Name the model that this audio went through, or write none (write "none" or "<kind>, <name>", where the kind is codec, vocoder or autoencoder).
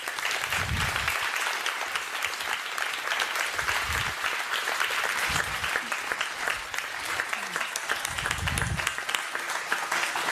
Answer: none